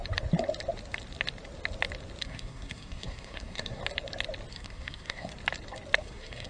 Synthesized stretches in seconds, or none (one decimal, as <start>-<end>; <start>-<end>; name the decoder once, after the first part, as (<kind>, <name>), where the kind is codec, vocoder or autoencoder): 2.2-3.8 (codec, SNAC); 4.5-5.3; 6.0-6.5